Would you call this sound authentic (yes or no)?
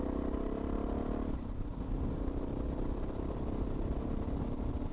yes